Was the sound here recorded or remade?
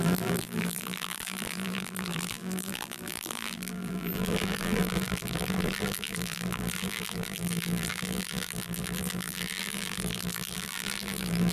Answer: remade